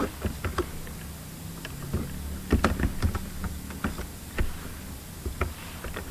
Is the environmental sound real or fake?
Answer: real